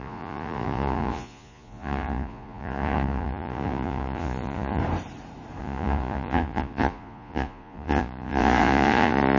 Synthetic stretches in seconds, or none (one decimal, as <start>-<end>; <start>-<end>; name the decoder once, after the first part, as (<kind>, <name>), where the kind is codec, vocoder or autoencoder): 0.0-4.8 (vocoder, Vocos); 5.6-9.4